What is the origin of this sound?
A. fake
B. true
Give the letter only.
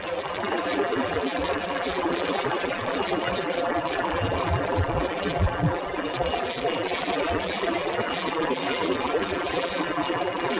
A